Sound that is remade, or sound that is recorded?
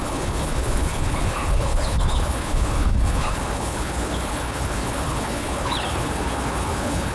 remade